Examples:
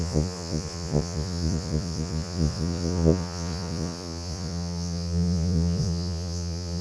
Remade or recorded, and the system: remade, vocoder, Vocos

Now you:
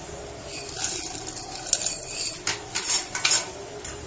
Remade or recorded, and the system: recorded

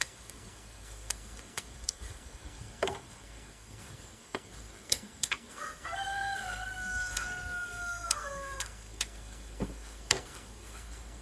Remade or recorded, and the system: remade, codec, SNAC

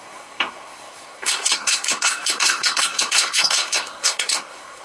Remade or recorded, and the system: remade, codec, SNAC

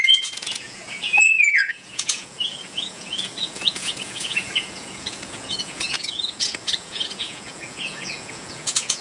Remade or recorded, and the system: remade, vocoder, Vocos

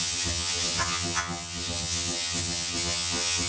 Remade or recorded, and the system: remade, vocoder, HiFi-GAN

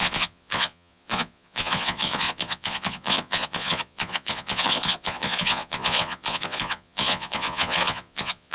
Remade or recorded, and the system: remade, vocoder, Vocos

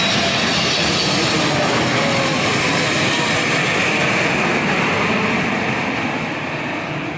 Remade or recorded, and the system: recorded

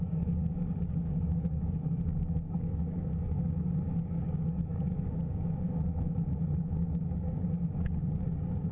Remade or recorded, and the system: remade, codec, DAC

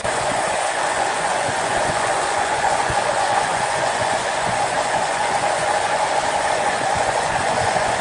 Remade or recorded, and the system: remade, vocoder, Vocos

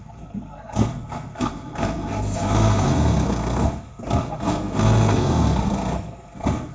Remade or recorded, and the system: remade, codec, SNAC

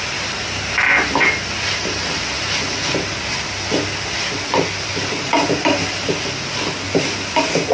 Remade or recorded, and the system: recorded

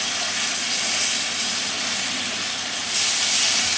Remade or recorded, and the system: recorded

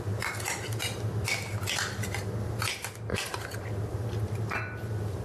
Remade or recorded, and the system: recorded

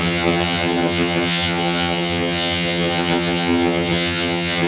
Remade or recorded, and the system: remade, vocoder, HiFi-GAN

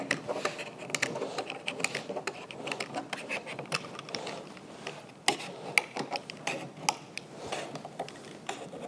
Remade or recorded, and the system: recorded